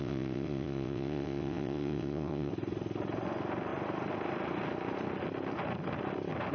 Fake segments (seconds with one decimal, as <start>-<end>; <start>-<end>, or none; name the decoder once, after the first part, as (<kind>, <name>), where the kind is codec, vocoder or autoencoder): 0.0-2.5 (vocoder, WaveNeXt)